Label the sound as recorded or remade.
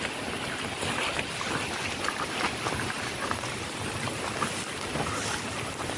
recorded